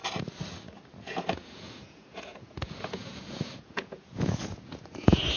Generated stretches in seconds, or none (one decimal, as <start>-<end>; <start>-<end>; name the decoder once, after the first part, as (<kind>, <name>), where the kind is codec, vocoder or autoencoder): 1.0-5.4 (vocoder, Vocos)

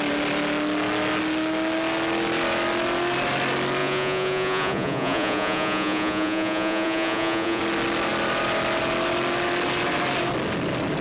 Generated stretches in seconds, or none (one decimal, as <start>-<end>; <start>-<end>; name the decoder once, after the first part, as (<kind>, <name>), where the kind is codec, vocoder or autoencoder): 3.8-7.6 (vocoder, Vocos)

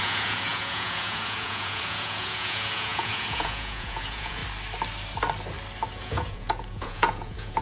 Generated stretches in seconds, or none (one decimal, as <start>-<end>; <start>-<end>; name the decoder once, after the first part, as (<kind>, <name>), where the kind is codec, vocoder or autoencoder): 0.0-4.4 (vocoder, Vocos); 6.0-7.6